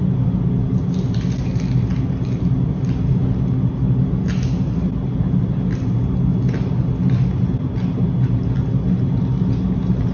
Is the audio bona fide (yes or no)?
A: yes